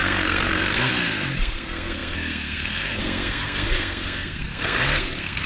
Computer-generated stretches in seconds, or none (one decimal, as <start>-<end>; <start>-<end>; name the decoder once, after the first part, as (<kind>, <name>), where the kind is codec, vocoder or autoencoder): 0.0-5.5 (codec, SNAC)